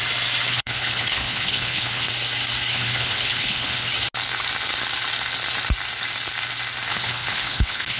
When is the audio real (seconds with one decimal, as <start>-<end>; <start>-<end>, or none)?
0.0-0.5; 2.1-2.7; 3.9-6.9